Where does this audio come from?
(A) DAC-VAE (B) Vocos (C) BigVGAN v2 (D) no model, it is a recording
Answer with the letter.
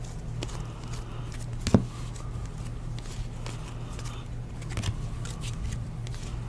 D